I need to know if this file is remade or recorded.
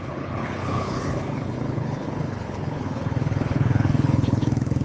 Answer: remade